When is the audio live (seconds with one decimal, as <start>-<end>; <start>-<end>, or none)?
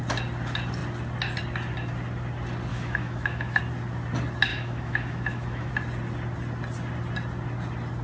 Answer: 0.0-2.7; 3.6-4.5; 5.7-8.0